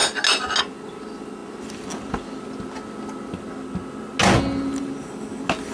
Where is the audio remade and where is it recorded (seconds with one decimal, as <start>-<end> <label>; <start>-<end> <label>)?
0.0-5.7 recorded